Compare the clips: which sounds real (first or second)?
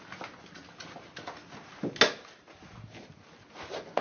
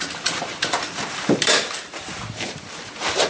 first